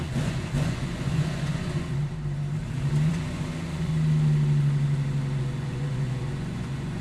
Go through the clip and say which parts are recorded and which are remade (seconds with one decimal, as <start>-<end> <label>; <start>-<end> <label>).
0.0-2.0 remade; 2.0-3.1 recorded; 3.1-3.9 remade; 3.9-5.4 recorded; 5.4-7.0 remade